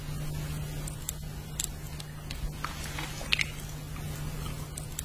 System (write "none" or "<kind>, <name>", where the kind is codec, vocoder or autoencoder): none